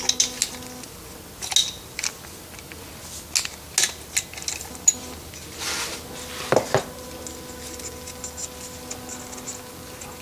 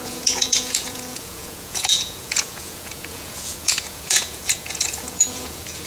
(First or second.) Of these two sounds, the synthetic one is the second